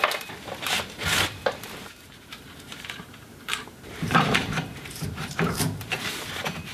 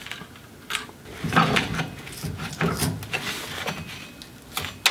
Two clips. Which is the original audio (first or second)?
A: second